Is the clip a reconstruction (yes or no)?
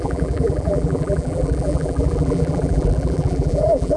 yes